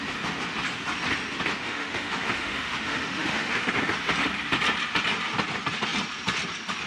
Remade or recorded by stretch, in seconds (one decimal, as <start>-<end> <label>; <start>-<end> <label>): 0.0-1.6 recorded; 1.6-3.7 remade; 3.7-6.9 recorded